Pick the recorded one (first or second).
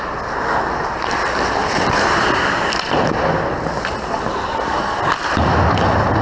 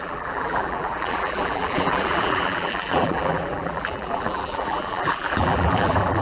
first